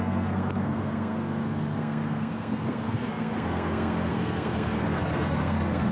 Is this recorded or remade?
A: remade